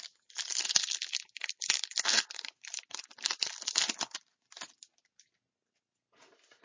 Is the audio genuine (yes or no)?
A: yes